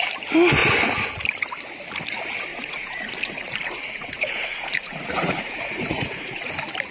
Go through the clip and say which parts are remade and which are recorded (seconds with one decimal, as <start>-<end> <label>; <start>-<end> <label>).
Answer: 0.0-2.5 recorded; 2.5-6.5 remade; 6.5-6.9 recorded